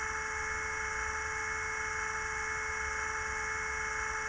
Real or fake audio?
real